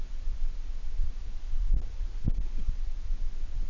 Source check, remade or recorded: recorded